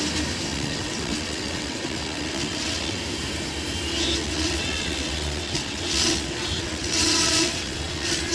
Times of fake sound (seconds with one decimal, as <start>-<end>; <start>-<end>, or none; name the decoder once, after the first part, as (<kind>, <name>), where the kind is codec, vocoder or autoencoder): 0.5-3.0 (vocoder, WaveNeXt); 4.2-8.3